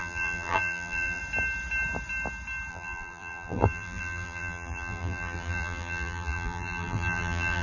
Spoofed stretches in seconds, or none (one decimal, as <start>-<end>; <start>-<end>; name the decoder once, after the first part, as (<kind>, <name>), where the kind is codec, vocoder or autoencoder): 0.0-1.2 (vocoder, BigVGAN v2); 2.7-7.6